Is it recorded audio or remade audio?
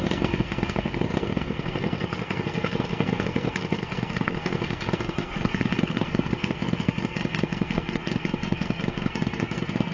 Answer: remade